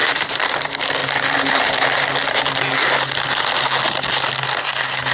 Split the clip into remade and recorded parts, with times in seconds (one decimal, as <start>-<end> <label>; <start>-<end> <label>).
0.0-1.0 recorded; 1.0-2.6 remade; 2.6-5.1 recorded